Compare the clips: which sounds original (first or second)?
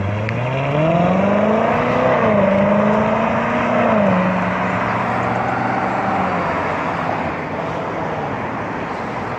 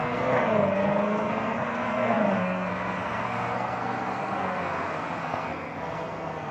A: first